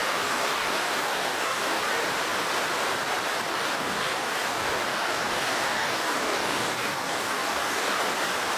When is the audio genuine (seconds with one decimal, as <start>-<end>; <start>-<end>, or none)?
1.8-3.5; 8.0-8.6